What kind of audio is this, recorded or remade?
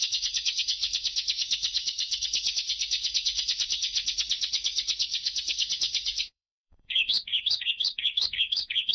remade